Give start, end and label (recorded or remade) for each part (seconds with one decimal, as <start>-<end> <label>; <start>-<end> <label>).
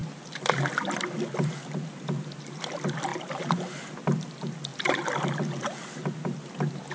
0.0-6.9 recorded